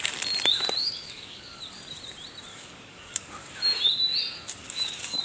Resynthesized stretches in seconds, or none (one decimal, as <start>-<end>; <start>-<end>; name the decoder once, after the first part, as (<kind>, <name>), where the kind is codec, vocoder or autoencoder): 0.8-1.6 (codec, DAC); 2.5-3.3; 4.6-5.2